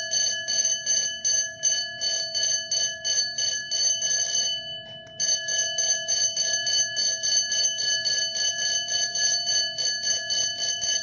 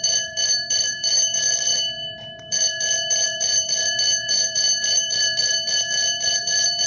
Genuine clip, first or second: first